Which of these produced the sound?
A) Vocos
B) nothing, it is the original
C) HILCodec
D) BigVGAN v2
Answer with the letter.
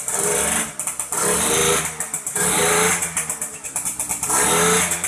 D